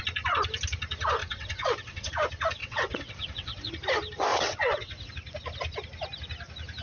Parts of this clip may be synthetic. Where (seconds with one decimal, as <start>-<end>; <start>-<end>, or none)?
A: 1.2-2.1; 2.6-3.7; 4.3-5.1